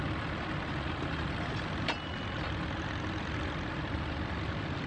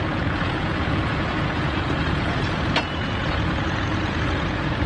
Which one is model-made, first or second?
second